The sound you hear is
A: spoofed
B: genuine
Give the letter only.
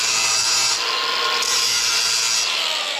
B